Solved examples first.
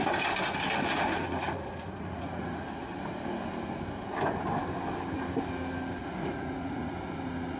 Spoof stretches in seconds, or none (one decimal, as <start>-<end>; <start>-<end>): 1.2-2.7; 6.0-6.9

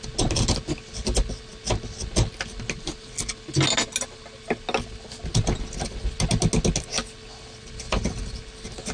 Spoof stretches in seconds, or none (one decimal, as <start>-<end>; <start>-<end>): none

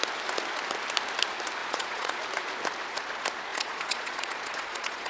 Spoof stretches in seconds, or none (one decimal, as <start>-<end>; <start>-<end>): 1.6-2.2; 3.5-5.1

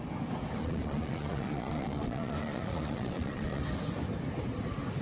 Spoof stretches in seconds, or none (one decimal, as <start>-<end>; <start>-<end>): 0.6-3.6

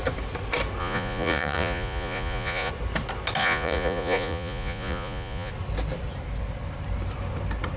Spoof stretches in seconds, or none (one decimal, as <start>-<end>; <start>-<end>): 0.8-2.7; 3.4-5.5

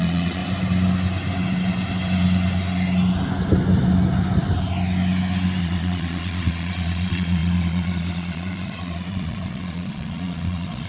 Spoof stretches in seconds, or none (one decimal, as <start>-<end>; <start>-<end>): 0.0-0.4; 5.6-10.9

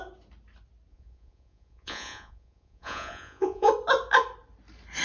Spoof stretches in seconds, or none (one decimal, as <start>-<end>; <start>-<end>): 0.9-3.7